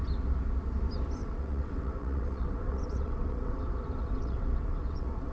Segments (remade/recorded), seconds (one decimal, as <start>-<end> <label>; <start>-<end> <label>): 0.0-1.2 recorded; 1.2-3.6 remade; 3.6-4.0 recorded; 4.0-5.3 remade

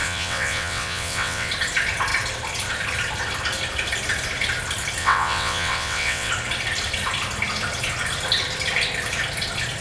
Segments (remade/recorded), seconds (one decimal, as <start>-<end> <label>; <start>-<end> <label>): 0.0-1.5 remade; 1.5-5.0 recorded; 5.0-6.3 remade; 6.3-9.8 recorded